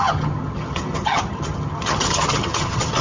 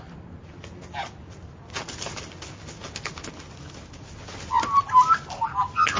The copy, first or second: first